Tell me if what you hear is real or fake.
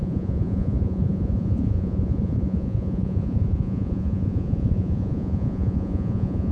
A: fake